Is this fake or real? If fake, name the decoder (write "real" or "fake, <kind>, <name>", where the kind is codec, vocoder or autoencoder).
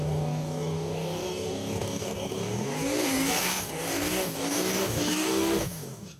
fake, codec, DAC